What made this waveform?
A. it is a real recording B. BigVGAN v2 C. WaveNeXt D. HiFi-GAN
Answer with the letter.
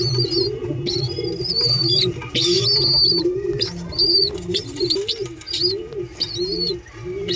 A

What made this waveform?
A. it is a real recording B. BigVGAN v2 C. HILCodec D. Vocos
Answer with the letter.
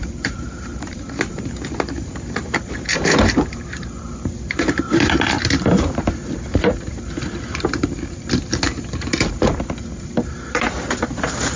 B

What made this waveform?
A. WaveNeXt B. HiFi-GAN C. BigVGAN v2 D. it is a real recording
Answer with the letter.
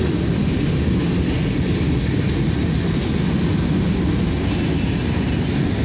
D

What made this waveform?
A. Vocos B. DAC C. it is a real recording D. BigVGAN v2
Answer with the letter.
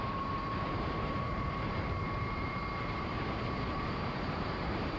D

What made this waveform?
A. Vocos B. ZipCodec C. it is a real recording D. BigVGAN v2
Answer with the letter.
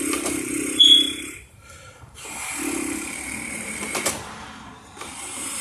D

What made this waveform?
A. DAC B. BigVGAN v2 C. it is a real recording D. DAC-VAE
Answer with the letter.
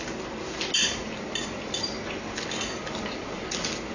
C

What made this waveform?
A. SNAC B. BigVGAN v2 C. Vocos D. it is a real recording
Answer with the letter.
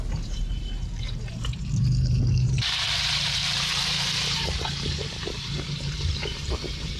B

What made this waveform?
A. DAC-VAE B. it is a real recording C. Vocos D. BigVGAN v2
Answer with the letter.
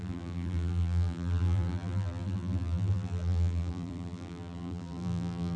D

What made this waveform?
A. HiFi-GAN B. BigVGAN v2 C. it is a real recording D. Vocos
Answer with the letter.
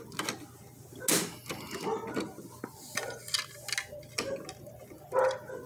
C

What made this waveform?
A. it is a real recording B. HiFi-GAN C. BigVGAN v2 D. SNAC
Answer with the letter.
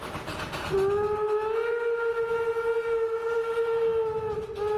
A